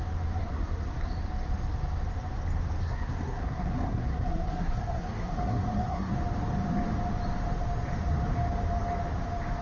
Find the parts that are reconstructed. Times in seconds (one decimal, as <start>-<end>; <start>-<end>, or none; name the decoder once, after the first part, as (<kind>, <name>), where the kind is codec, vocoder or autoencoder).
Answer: 0.4-1.1 (codec, SNAC); 2.8-6.1